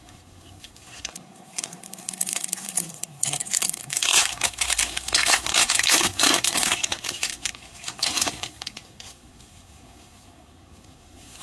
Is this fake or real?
fake